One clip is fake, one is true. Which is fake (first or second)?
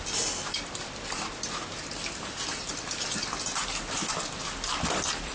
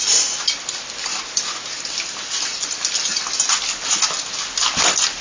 first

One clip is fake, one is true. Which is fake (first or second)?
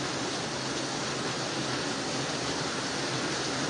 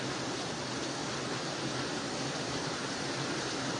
second